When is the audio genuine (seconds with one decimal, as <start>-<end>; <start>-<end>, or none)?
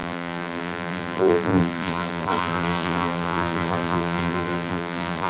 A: none